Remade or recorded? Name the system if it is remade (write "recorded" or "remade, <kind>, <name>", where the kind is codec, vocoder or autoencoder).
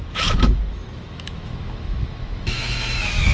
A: remade, autoencoder, DAC-VAE